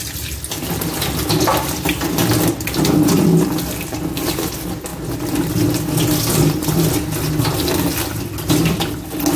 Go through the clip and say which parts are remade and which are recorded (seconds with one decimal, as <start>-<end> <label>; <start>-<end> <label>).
0.0-9.4 recorded